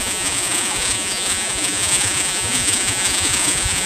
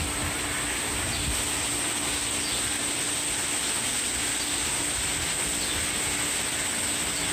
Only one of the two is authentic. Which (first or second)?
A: second